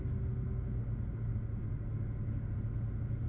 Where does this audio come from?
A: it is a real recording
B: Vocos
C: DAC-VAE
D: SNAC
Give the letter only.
A